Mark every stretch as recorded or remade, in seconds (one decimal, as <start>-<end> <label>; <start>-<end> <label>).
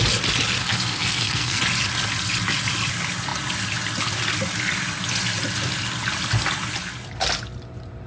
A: 0.0-0.6 recorded; 0.6-1.6 remade; 1.6-8.1 recorded